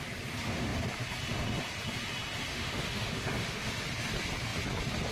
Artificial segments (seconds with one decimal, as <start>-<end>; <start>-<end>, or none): 2.5-3.7